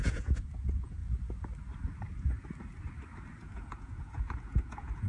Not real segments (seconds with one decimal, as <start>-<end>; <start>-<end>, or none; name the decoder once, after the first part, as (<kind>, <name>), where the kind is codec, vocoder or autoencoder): 0.0-1.0 (vocoder, Vocos); 3.4-5.1